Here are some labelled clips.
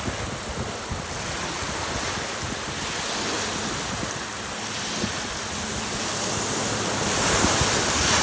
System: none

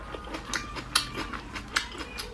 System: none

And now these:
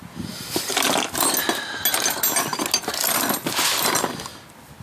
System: none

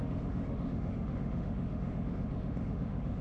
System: autoencoder, DAC-VAE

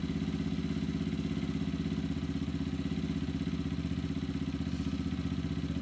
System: none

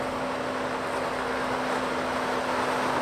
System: none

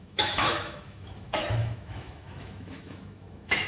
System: autoencoder, DAC-VAE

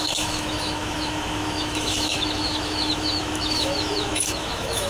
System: autoencoder, DAC-VAE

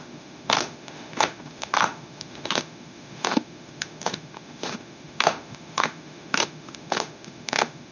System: autoencoder, DAC-VAE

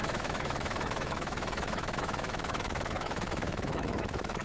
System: autoencoder, DAC-VAE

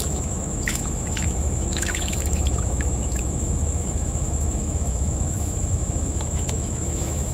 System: autoencoder, DAC-VAE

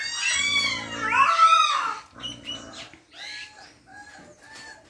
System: none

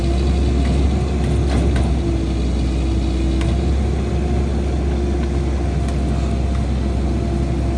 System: none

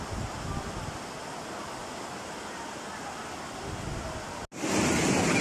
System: none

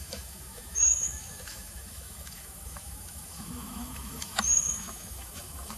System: autoencoder, DAC-VAE